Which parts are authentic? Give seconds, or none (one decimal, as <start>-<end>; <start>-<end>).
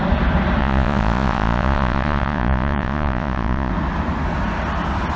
0.0-0.6; 3.7-5.2